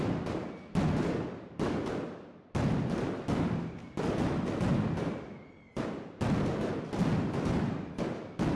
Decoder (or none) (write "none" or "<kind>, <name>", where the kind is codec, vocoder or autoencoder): none